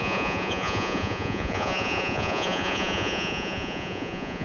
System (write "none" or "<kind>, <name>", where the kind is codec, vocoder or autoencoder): vocoder, Vocos